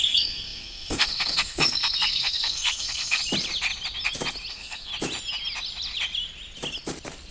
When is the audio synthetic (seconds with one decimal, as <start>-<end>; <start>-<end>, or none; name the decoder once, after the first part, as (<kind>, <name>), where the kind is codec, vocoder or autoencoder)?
0.0-3.2 (codec, SNAC); 4.5-4.9